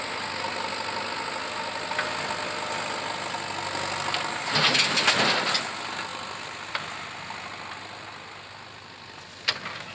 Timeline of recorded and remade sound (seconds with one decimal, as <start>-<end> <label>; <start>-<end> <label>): 0.0-9.9 recorded